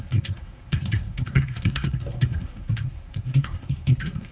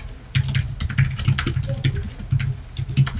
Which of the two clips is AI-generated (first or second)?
first